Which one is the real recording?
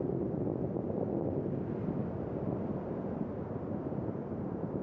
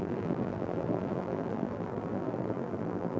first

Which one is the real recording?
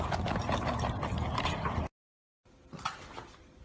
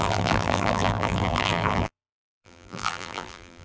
first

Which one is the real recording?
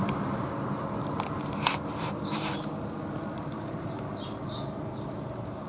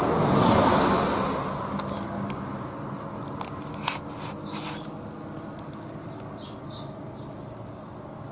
second